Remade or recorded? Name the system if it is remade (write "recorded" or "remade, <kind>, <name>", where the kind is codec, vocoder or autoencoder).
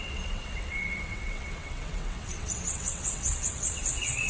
remade, vocoder, WaveNeXt